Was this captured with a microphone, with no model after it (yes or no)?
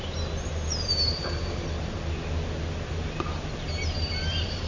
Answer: yes